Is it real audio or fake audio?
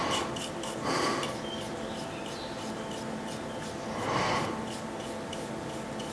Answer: real